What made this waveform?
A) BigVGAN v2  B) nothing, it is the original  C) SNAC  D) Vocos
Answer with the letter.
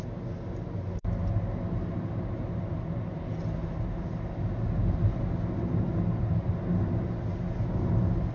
B